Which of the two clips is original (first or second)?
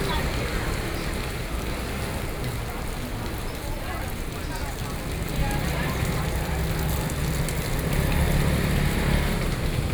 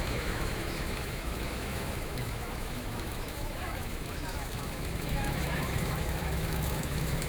first